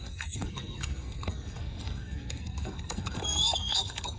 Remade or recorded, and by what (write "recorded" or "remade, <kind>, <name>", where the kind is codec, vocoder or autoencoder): remade, codec, SNAC